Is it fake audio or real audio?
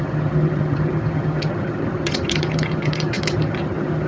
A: fake